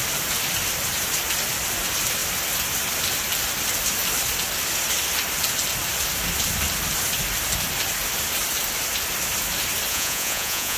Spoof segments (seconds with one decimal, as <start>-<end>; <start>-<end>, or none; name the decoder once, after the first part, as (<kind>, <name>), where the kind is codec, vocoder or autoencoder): 9.9-10.8 (vocoder, Vocos)